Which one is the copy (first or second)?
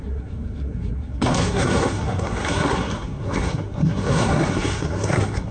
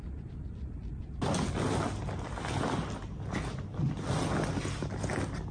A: first